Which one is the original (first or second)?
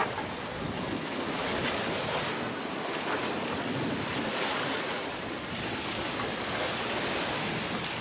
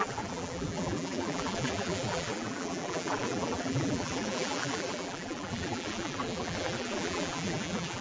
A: first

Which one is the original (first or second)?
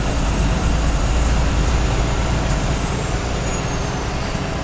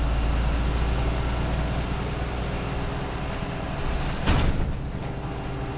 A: second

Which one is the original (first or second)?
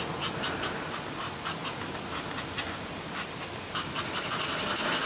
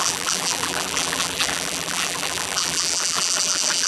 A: first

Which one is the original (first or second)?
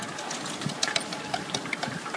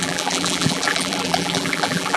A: first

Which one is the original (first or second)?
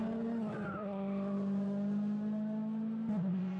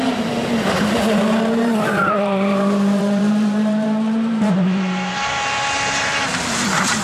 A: first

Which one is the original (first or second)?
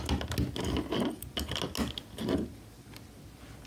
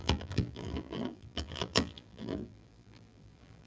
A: first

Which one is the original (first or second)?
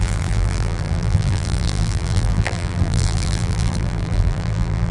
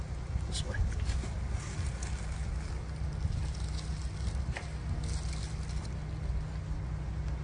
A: second